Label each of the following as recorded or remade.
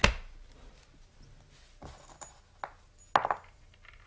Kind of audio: recorded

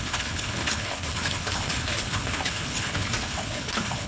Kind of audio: remade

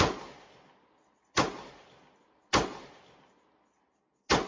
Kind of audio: recorded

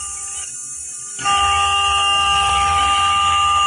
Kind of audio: recorded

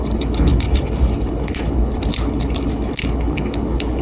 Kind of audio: remade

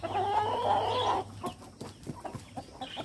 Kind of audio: recorded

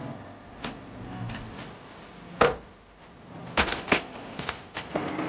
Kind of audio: recorded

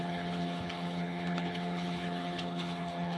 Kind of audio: remade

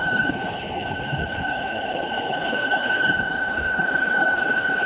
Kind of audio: remade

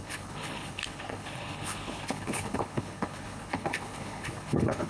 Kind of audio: remade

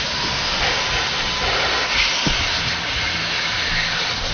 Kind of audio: recorded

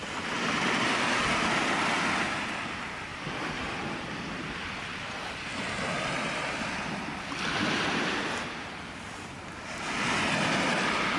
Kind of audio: recorded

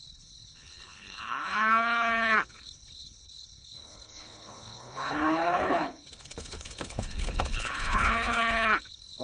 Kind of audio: remade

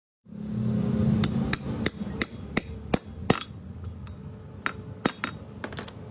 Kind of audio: recorded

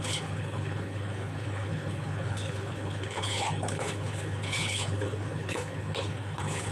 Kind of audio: remade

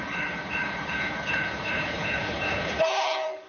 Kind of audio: remade